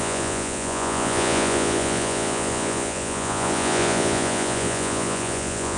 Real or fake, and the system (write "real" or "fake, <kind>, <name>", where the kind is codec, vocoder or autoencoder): fake, vocoder, Vocos